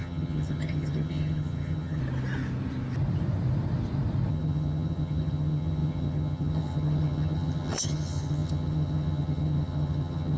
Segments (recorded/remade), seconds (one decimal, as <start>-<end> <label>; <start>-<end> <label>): 0.0-2.0 remade; 2.0-4.3 recorded; 4.3-10.4 remade